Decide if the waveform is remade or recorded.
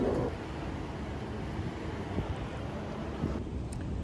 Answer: recorded